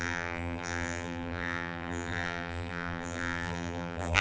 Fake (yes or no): yes